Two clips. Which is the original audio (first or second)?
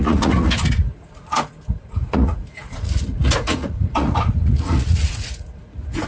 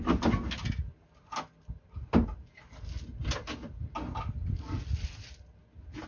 second